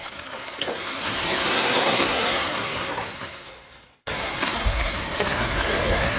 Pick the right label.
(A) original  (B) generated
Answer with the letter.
B